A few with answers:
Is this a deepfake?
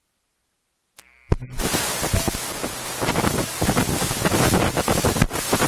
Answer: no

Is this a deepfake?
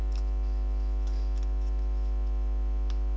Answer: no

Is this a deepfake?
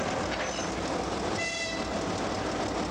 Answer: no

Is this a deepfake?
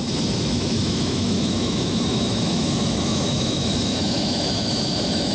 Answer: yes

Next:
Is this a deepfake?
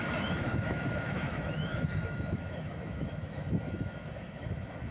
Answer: yes